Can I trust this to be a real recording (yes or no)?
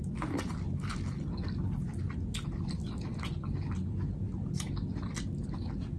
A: yes